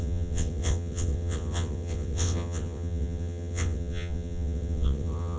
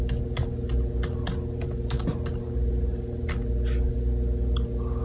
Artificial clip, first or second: first